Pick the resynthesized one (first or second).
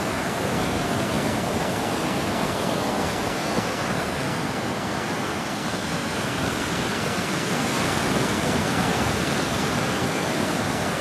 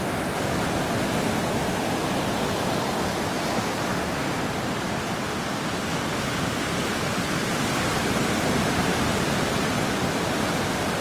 first